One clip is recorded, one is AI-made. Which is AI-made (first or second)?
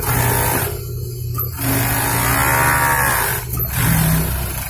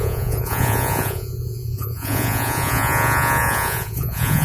second